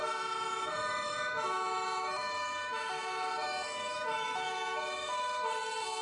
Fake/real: fake